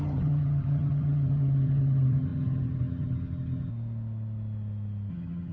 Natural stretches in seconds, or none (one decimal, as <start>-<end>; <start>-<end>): 3.7-5.1